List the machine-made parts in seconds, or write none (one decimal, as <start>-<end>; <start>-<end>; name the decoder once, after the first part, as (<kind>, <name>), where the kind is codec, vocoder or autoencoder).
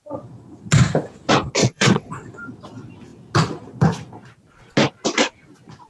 1.6-2.3 (vocoder, WaveNeXt)